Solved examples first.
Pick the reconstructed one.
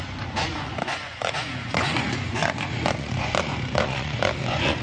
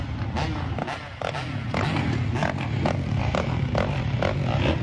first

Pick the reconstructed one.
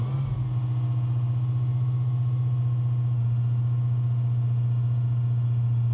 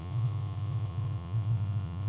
second